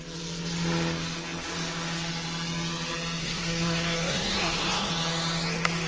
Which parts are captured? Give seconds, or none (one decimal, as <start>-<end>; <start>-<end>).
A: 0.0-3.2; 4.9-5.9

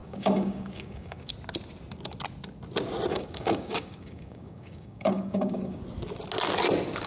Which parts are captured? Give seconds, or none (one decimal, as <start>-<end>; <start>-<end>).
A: 1.3-3.1; 5.8-7.1

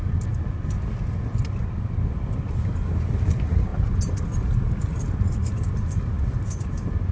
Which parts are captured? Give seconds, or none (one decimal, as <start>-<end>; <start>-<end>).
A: 0.0-7.1